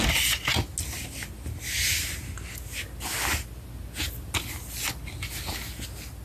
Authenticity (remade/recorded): recorded